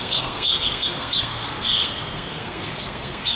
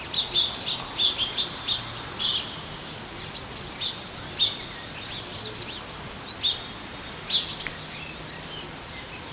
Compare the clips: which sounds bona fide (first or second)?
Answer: second